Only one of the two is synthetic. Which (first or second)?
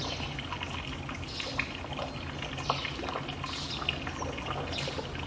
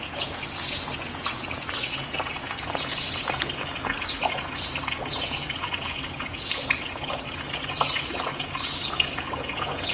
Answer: second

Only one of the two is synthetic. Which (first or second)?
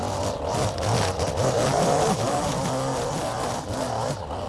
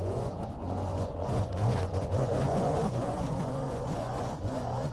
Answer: second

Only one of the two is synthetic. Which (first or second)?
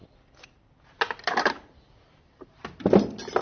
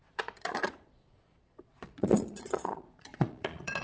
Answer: second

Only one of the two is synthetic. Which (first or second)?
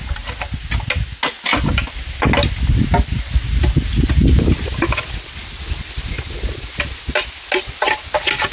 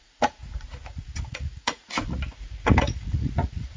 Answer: second